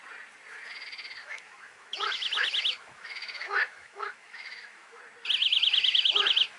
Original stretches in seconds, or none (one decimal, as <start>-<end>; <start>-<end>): 0.0-1.2; 5.0-5.4